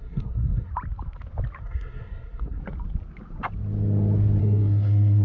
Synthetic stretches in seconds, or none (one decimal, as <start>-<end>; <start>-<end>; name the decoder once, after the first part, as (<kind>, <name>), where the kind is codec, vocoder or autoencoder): 0.0-0.7 (codec, SNAC); 1.6-2.6; 4.4-5.2